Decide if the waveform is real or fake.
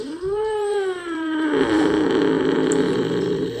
fake